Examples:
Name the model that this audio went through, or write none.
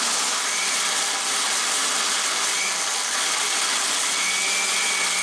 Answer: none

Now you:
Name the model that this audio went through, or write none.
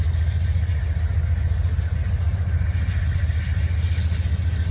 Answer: none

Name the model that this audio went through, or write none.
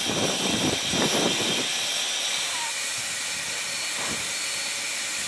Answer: none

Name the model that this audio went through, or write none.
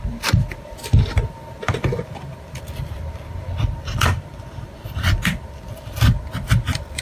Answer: vocoder, BigVGAN v2